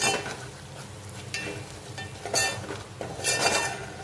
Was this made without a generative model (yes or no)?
yes